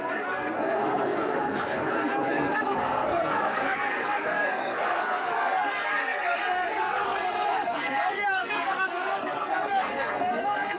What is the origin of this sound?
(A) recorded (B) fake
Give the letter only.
B